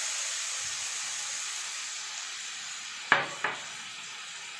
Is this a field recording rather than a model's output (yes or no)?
yes